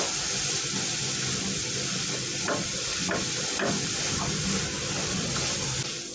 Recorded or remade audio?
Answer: recorded